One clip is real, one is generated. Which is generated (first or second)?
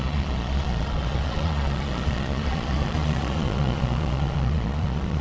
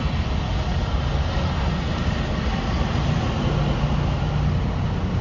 first